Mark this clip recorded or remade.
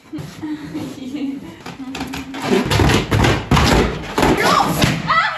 recorded